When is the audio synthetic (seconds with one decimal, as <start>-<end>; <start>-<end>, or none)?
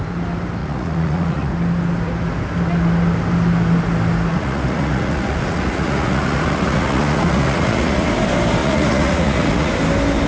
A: 0.6-1.5; 4.3-8.1; 8.6-9.7